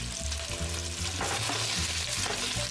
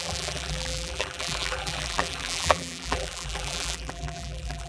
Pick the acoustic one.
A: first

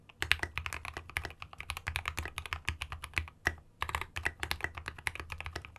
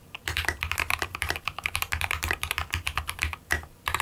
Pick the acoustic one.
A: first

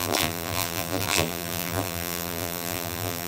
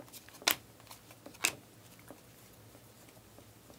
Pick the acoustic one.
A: second